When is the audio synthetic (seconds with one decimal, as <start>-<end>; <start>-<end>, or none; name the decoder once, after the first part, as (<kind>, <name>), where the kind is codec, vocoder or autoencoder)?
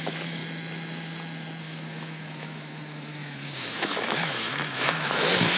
0.0-0.4 (autoencoder, DAC-VAE); 1.6-5.6